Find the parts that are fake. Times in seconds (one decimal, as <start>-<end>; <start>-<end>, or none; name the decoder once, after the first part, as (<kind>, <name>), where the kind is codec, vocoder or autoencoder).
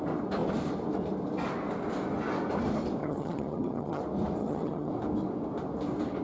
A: 3.0-4.0 (vocoder, HiFi-GAN); 4.4-4.9